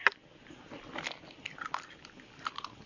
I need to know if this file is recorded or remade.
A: recorded